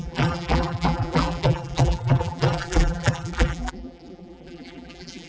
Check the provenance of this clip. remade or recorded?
remade